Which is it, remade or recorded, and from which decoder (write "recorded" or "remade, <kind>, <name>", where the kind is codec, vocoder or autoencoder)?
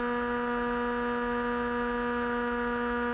recorded